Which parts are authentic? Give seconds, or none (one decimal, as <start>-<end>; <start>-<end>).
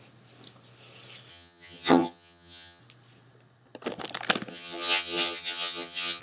0.0-1.3; 2.8-4.5